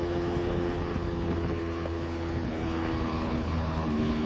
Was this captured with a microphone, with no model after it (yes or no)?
no